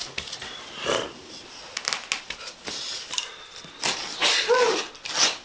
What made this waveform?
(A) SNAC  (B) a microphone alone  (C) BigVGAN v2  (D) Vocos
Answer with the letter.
B